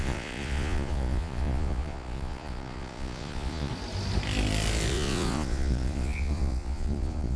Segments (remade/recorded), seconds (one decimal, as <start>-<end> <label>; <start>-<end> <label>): 0.0-3.7 remade; 3.7-4.9 recorded; 4.9-7.4 remade